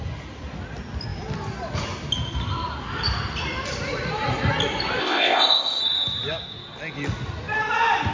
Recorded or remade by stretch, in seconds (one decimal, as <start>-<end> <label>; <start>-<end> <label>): 0.0-5.0 recorded; 5.0-5.8 remade; 5.8-8.1 recorded